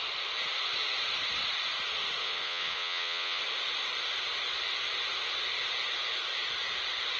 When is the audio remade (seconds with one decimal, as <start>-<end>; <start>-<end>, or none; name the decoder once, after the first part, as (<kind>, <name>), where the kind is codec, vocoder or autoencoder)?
2.2-3.4 (vocoder, Vocos)